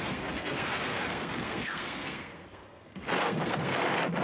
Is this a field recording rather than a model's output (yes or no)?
no